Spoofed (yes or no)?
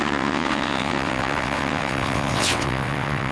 yes